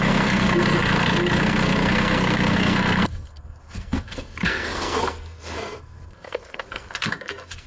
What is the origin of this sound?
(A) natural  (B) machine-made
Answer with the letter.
B